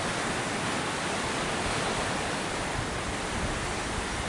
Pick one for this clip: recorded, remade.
recorded